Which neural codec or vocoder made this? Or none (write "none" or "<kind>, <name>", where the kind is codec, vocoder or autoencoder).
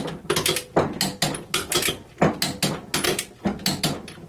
none